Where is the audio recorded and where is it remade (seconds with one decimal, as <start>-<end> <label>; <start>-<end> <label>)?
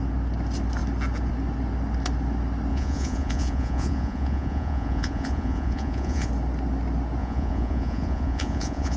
0.0-2.7 recorded; 2.7-6.3 remade; 6.3-7.2 recorded; 7.2-9.0 remade